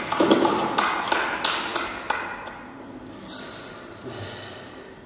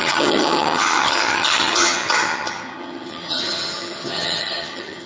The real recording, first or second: first